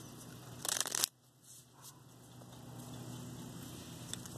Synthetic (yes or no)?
no